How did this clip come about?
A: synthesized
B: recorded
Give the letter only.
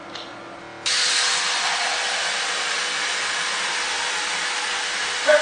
B